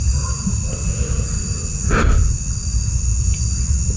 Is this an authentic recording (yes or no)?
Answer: yes